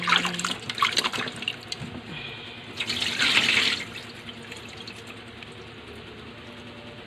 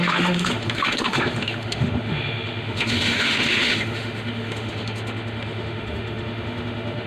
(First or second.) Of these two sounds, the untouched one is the first